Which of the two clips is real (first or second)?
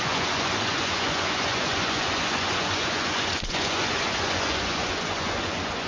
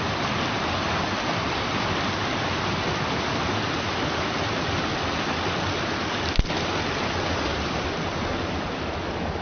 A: second